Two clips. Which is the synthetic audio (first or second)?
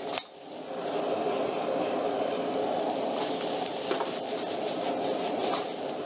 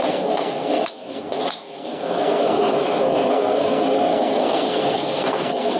second